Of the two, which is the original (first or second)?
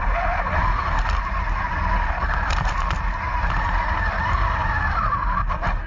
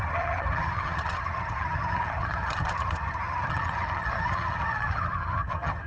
first